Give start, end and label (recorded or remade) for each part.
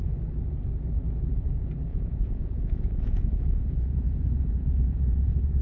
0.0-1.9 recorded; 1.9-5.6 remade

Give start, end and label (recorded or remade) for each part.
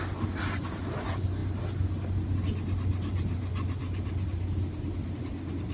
0.0-5.7 recorded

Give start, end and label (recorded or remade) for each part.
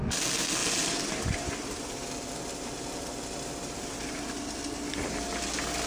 0.0-0.6 recorded; 0.6-4.1 remade; 4.1-5.9 recorded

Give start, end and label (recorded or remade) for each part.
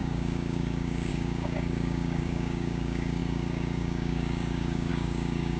0.0-5.6 remade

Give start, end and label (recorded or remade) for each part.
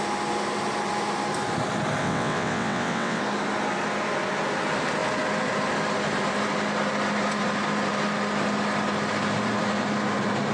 0.0-2.0 recorded; 2.0-3.2 remade; 3.2-10.5 recorded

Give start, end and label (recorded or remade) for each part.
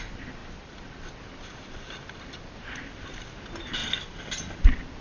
0.0-5.0 recorded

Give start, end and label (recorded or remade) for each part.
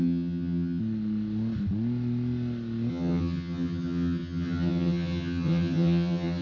0.0-0.8 remade; 0.8-2.9 recorded; 2.9-6.4 remade